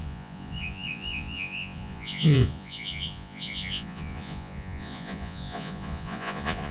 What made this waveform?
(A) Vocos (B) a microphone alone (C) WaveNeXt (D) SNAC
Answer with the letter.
A